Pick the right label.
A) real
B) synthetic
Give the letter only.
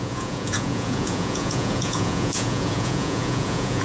B